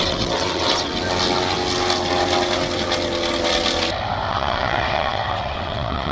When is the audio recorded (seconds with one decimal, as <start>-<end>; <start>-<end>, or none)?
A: 0.9-4.3